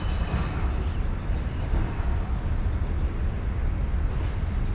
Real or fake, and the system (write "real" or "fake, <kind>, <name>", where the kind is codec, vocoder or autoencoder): real